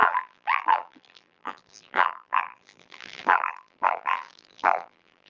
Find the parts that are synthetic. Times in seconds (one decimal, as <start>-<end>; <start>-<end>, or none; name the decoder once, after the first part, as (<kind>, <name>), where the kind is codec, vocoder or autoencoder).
0.0-5.3 (vocoder, BigVGAN v2)